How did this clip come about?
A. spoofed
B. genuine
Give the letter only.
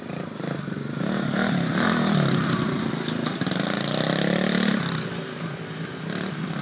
A